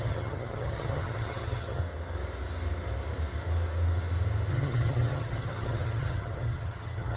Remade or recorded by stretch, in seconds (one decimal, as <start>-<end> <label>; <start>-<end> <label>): 0.0-1.8 remade; 1.8-4.5 recorded; 4.5-7.2 remade